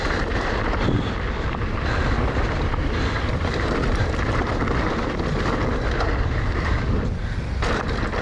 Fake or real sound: fake